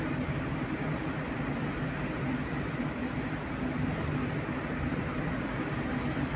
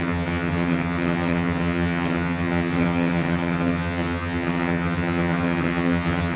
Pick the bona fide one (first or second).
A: first